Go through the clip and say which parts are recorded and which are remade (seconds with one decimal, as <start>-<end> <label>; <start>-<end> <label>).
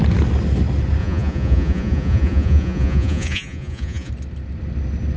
0.0-1.0 recorded; 1.0-4.1 remade; 4.1-5.2 recorded